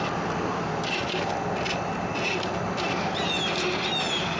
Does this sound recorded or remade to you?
recorded